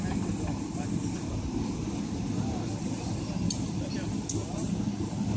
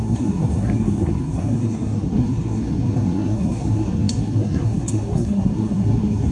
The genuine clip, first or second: first